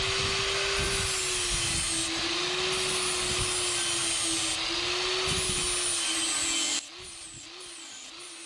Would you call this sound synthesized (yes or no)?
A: no